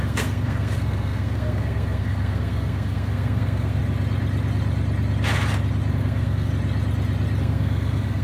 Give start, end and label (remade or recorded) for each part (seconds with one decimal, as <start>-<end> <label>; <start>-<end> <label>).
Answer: 0.0-3.8 remade; 3.8-5.9 recorded; 5.9-6.5 remade; 6.5-7.4 recorded; 7.4-8.2 remade